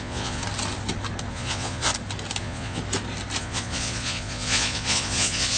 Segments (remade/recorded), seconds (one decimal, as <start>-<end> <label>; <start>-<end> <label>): 0.0-0.4 remade; 0.4-1.3 recorded; 1.3-1.9 remade; 1.9-2.4 recorded; 2.4-2.8 remade; 2.8-3.4 recorded; 3.4-5.6 remade